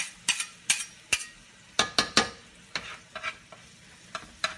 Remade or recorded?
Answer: recorded